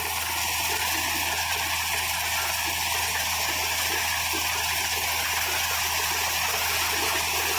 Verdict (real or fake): real